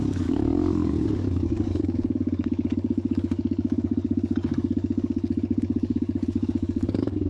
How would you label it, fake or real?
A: fake